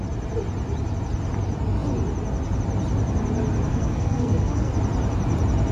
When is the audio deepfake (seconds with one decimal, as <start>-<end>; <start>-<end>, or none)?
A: 3.7-4.7